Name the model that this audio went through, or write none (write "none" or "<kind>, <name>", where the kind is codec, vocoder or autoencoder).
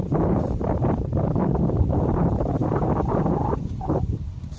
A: vocoder, BigVGAN v2